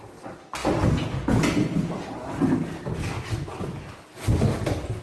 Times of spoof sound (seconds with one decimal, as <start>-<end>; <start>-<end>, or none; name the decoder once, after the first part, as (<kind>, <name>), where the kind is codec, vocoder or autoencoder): none